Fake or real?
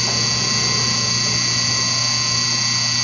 real